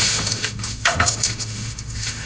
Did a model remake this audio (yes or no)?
yes